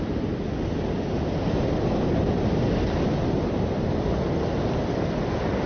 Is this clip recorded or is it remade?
recorded